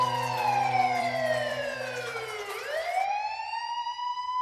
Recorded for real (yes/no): no